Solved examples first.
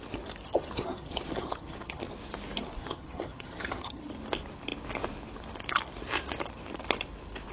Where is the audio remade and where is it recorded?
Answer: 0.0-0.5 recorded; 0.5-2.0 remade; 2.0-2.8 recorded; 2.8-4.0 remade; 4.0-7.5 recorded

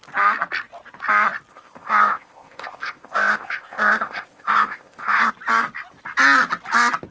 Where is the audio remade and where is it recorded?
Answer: 0.0-1.5 recorded; 1.5-5.3 remade; 5.3-7.1 recorded

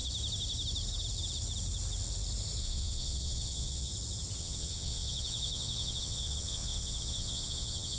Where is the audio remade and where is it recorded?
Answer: 0.0-2.6 recorded; 2.6-3.9 remade; 3.9-4.4 recorded; 4.4-8.0 remade

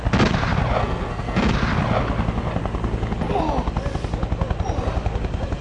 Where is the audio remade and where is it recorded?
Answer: 0.0-0.8 recorded; 0.8-1.5 remade; 1.5-5.6 recorded

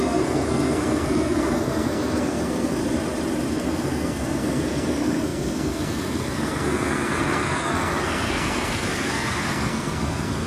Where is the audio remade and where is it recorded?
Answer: 0.0-2.8 remade; 2.8-3.5 recorded; 3.5-10.5 remade

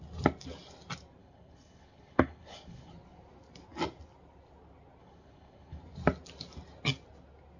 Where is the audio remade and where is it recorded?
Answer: 0.0-1.2 recorded; 1.2-2.9 remade; 2.9-5.0 recorded; 5.0-5.8 remade; 5.8-7.6 recorded

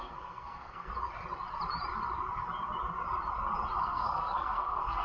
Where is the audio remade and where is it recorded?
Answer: 0.0-0.9 remade; 0.9-3.8 recorded; 3.8-5.0 remade

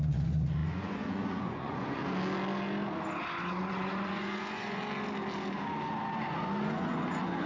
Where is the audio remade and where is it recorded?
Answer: 0.0-2.0 remade; 2.0-3.7 recorded; 3.7-4.8 remade; 4.8-6.6 recorded; 6.6-7.5 remade